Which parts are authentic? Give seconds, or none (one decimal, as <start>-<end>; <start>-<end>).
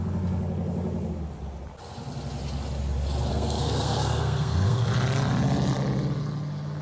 0.0-3.3; 4.9-6.8